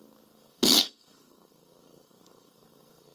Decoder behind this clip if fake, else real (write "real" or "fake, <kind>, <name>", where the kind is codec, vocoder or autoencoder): fake, codec, SNAC